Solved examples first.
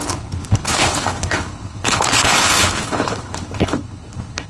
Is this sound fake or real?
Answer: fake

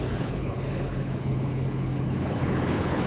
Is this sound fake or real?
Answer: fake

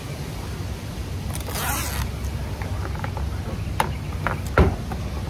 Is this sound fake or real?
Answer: real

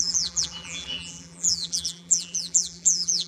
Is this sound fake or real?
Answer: fake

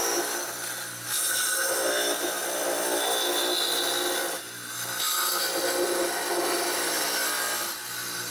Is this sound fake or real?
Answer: real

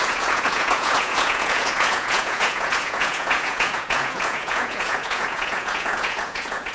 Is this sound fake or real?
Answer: fake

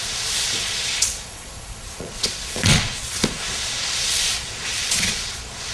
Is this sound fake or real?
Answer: fake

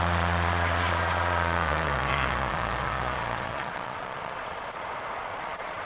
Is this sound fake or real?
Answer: fake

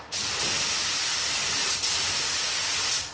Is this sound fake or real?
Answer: fake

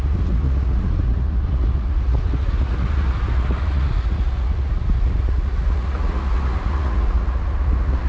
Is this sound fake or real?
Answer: fake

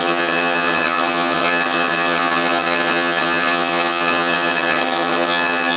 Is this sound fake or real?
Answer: fake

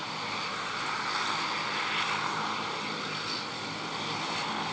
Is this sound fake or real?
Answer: real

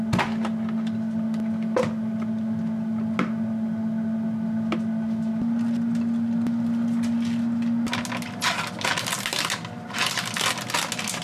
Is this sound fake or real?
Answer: real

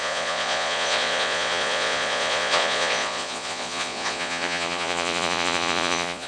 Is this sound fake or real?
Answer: fake